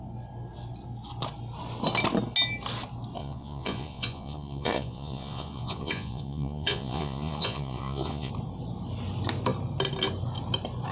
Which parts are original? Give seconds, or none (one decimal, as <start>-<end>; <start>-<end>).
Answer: 0.0-3.2; 8.3-10.9

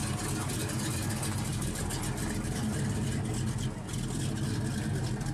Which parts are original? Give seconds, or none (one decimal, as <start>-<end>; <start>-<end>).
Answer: 0.0-5.3

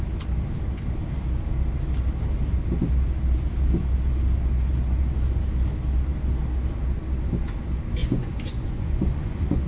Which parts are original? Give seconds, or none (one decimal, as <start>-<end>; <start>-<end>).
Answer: 0.0-8.0